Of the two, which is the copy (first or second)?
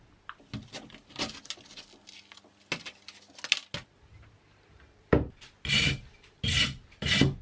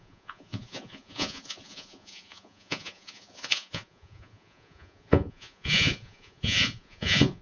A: second